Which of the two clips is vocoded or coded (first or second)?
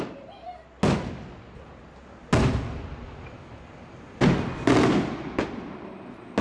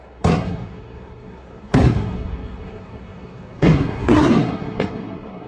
second